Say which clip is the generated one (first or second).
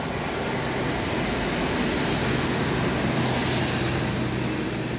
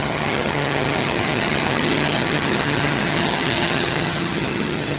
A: second